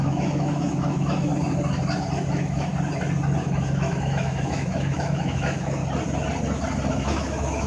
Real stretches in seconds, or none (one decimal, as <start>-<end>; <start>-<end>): 1.3-2.3; 2.7-3.4; 5.8-6.9

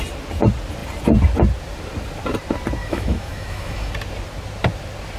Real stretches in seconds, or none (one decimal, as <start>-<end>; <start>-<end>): 0.0-2.8; 3.9-5.2

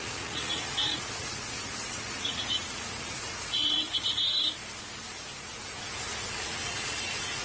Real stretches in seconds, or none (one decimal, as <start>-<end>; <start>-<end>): 4.6-5.4